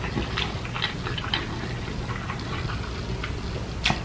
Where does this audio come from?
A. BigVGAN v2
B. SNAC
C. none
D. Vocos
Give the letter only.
C